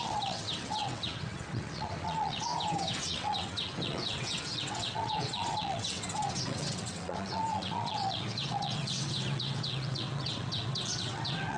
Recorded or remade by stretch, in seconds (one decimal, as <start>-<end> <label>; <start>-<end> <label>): 0.0-2.5 remade; 2.5-3.0 recorded; 3.0-11.6 remade